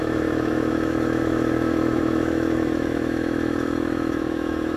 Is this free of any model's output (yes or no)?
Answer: no